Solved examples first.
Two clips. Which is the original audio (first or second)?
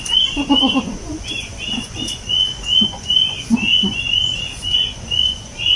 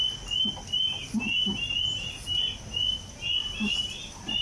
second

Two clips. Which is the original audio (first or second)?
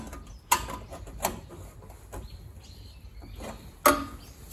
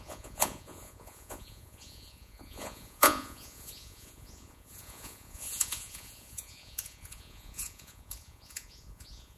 first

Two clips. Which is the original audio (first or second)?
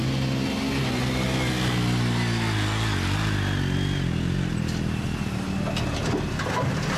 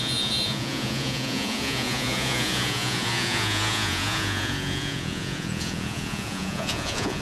first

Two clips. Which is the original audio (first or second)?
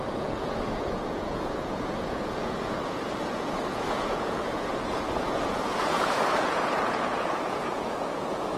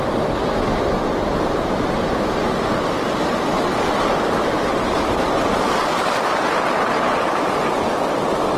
second